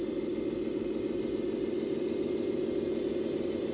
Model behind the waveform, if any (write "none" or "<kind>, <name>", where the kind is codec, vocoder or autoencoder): none